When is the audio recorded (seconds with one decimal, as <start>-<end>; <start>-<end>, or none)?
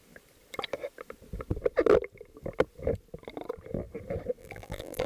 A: 0.0-4.4